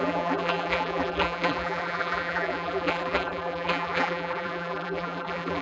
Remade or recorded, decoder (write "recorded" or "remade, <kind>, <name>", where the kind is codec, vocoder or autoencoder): remade, vocoder, BigVGAN v2